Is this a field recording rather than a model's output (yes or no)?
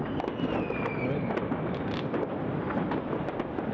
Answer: yes